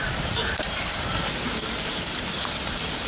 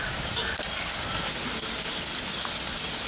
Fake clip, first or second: first